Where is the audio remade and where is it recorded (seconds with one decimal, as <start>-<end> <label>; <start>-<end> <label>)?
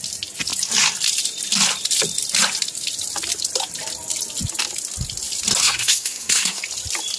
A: 0.0-5.6 recorded; 5.6-6.6 remade; 6.6-7.2 recorded